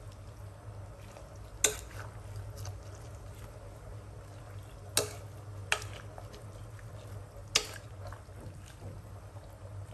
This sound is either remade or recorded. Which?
recorded